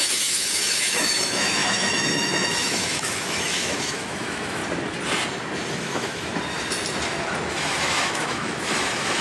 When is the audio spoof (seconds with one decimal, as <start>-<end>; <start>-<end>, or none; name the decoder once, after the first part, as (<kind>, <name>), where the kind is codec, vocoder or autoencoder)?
0.0-4.6 (autoencoder, DAC-VAE); 5.7-6.3; 7.5-9.2